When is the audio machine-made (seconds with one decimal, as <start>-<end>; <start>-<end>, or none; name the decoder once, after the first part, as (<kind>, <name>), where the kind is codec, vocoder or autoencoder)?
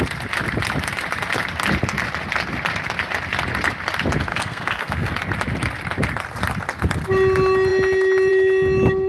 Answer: 4.3-5.1 (codec, SNAC)